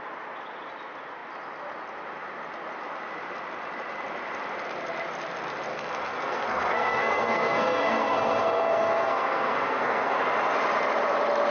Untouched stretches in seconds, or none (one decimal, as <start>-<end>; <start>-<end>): 0.0-5.7; 10.2-11.5